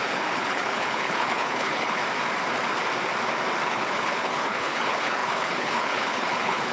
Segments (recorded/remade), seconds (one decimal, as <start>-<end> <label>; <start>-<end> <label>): 0.0-2.0 remade; 2.0-3.7 recorded; 3.7-6.7 remade